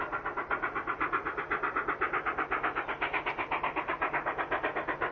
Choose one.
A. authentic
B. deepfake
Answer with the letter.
A